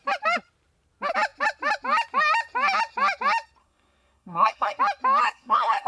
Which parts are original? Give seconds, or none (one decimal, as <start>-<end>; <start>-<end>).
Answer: 0.0-3.6; 4.8-5.2